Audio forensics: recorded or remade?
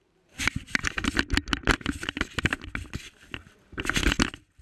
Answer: recorded